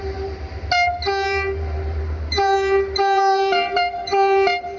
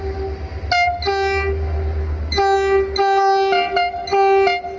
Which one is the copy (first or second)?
first